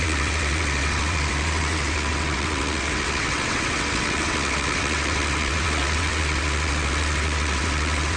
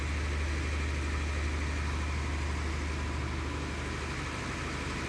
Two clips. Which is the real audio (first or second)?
second